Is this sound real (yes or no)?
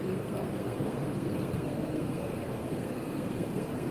no